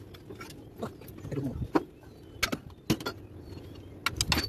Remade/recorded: recorded